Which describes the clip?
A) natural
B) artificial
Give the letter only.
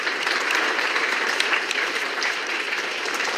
B